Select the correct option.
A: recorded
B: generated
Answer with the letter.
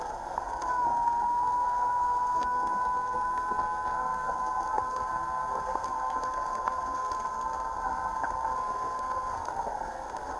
B